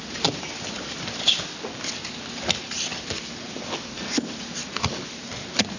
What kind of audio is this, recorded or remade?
recorded